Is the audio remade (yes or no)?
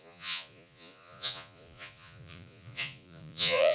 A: yes